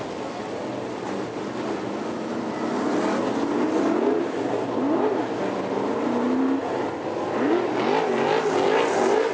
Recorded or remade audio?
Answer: recorded